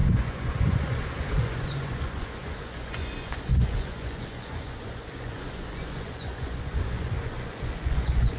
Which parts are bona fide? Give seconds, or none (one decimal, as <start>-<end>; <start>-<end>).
none